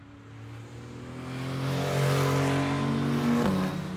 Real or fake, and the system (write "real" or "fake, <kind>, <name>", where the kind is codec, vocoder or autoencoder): real